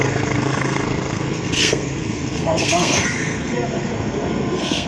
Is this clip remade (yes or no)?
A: yes